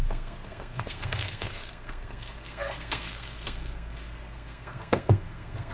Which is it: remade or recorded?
remade